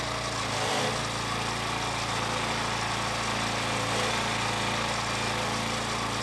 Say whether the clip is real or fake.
real